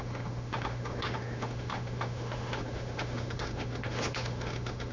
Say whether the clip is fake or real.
fake